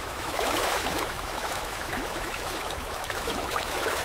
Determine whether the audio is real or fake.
fake